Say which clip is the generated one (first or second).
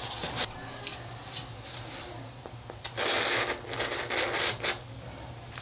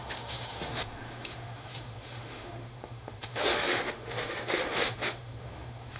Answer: second